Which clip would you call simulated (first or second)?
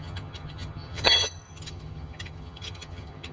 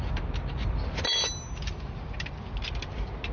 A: first